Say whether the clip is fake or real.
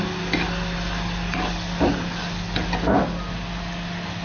real